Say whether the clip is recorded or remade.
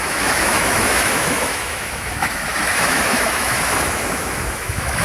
remade